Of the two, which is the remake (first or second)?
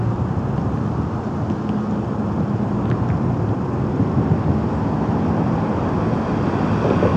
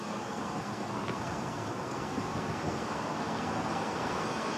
second